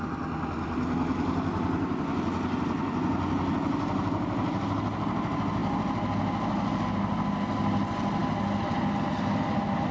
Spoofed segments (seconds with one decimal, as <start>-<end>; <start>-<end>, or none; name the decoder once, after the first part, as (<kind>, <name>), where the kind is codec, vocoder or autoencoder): none